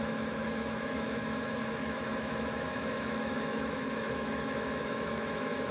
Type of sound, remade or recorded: remade